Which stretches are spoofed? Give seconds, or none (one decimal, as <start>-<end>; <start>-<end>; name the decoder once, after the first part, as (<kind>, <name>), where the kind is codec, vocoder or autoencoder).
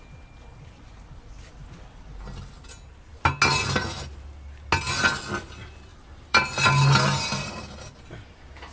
5.9-6.7 (vocoder, BigVGAN v2)